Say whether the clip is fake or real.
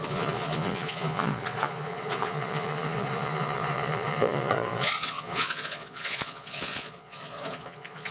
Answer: fake